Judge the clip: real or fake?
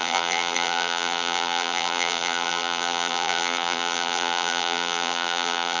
fake